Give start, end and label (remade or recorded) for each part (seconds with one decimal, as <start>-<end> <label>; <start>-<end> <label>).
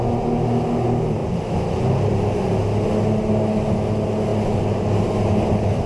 0.0-5.9 recorded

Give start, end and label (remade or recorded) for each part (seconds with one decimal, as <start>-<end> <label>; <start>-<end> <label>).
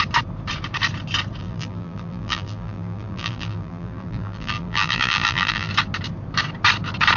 0.0-1.4 recorded; 1.4-5.7 remade; 5.7-7.2 recorded